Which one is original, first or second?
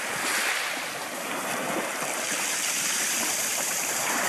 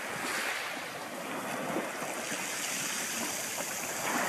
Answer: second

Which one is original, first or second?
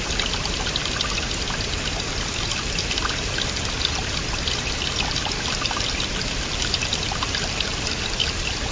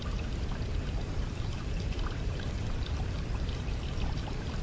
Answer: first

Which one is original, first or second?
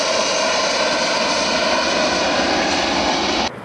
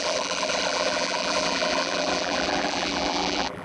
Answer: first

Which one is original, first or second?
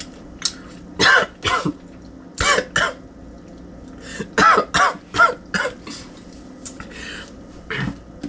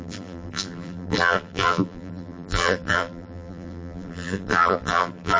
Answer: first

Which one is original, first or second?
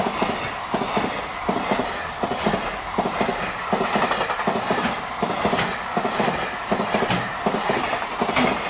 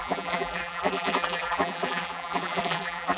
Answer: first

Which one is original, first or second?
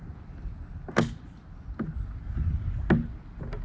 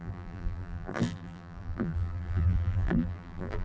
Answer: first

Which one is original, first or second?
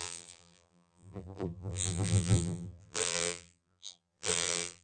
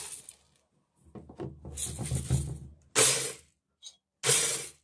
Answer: second